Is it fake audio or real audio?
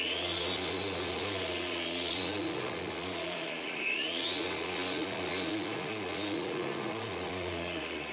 fake